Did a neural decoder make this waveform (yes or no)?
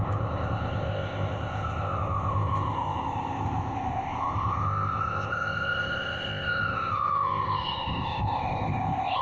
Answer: yes